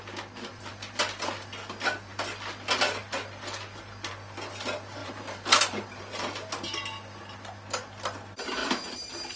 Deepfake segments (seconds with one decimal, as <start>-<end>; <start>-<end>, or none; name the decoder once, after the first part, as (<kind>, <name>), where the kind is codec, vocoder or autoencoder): 5.0-6.0 (vocoder, BigVGAN v2)